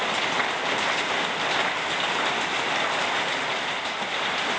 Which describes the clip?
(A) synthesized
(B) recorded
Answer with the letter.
B